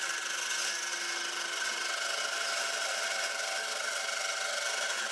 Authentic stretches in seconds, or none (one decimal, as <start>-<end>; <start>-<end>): 0.0-5.1